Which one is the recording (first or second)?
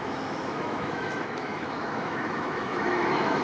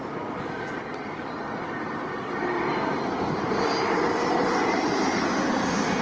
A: second